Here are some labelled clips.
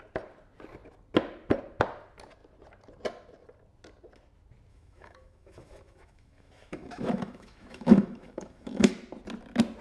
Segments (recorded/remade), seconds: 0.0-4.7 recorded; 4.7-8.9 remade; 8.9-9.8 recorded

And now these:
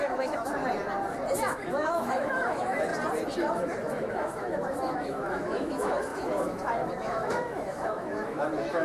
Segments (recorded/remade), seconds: 0.0-0.6 remade; 0.6-1.5 recorded; 1.5-2.9 remade; 2.9-3.4 recorded; 3.4-8.8 remade

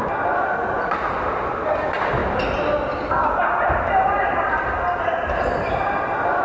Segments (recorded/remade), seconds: 0.0-6.4 recorded

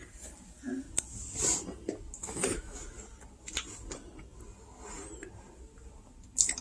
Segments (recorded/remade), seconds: 0.0-2.2 recorded; 2.2-2.8 remade; 2.8-6.6 recorded

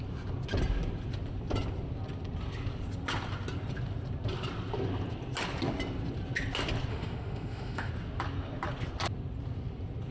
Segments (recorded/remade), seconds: 0.0-6.9 recorded; 6.9-7.9 remade; 7.9-10.1 recorded

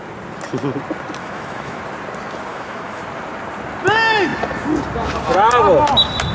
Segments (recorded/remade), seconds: 0.0-1.2 recorded; 1.2-1.8 remade; 1.8-2.5 recorded; 2.5-3.0 remade; 3.0-6.3 recorded

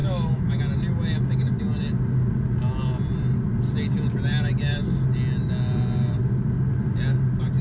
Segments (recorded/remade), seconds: 0.0-0.6 remade; 0.6-7.6 recorded

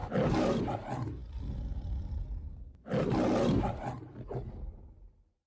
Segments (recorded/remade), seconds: 0.0-5.5 recorded